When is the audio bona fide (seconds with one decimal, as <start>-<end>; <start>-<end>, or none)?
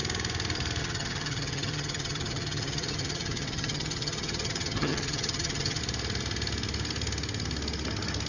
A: 0.0-0.8; 5.8-8.3